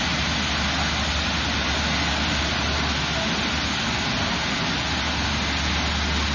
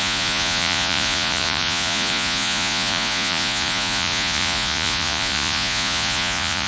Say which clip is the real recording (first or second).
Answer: first